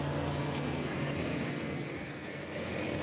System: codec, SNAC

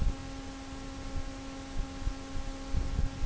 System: none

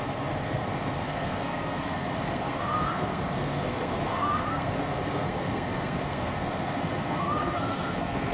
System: codec, SNAC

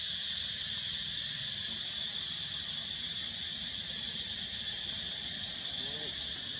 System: none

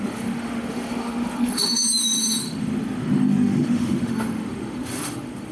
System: autoencoder, DAC-VAE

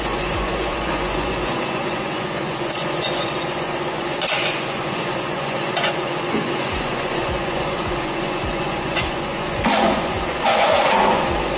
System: vocoder, Vocos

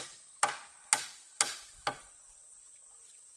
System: none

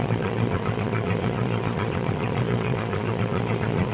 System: vocoder, Vocos